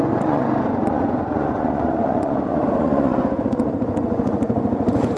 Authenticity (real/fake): fake